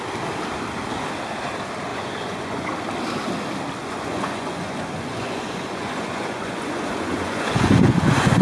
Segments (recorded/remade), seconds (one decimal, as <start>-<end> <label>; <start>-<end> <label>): 0.0-1.9 recorded; 1.9-2.7 remade; 2.7-3.8 recorded; 3.8-8.4 remade